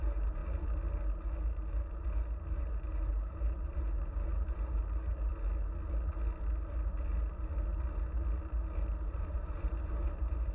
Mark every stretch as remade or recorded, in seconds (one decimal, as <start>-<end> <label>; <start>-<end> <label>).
0.0-0.4 remade; 0.4-2.6 recorded; 2.6-5.3 remade; 5.3-9.1 recorded; 9.1-10.5 remade